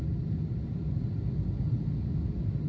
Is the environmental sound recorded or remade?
recorded